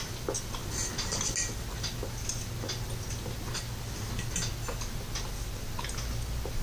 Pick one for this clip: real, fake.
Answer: real